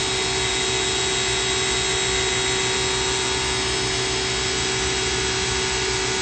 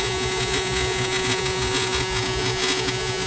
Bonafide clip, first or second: first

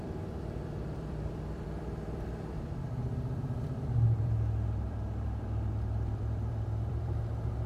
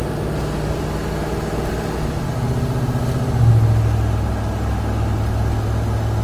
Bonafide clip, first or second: second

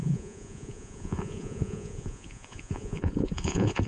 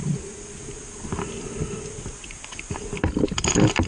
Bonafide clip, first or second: second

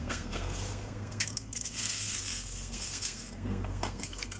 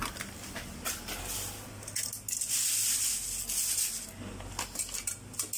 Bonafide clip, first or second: second